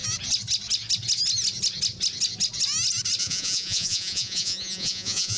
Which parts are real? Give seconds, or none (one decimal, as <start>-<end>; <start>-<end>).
0.0-3.2